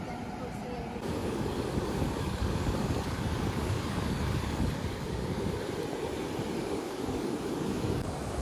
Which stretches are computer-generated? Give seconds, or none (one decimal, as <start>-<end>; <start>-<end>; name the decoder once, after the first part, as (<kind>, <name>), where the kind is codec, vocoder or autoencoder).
1.2-5.7 (codec, DAC); 6.6-8.4